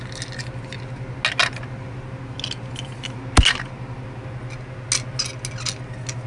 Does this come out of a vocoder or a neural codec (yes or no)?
no